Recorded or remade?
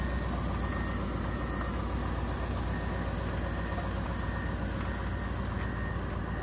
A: recorded